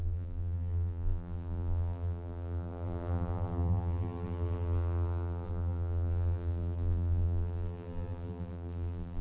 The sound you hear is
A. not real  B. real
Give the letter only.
A